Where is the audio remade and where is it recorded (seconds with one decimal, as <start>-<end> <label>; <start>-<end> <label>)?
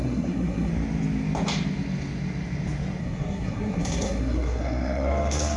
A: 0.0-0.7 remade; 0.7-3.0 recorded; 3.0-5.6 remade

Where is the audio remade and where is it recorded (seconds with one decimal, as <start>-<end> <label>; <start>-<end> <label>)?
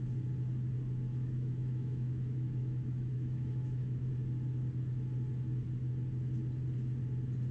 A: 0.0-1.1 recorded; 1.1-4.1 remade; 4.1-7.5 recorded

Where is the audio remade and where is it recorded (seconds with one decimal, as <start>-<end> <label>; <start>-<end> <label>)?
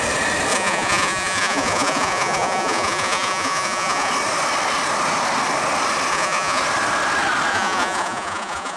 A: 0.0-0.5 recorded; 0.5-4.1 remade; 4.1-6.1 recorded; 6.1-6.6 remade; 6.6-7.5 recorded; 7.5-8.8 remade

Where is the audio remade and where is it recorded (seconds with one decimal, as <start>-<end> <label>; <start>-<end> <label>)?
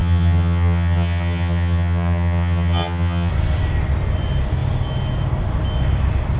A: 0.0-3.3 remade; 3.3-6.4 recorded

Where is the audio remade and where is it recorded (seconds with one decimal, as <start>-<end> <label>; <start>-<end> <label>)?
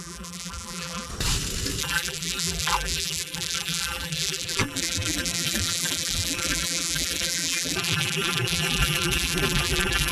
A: 0.0-1.1 remade; 1.1-1.8 recorded; 1.8-10.1 remade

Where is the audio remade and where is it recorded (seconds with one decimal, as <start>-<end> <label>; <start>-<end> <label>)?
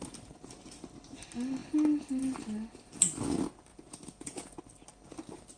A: 0.0-3.7 recorded; 3.7-4.6 remade; 4.6-5.6 recorded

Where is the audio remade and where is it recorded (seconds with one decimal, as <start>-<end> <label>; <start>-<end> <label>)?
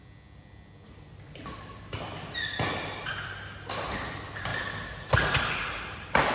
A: 0.0-6.3 recorded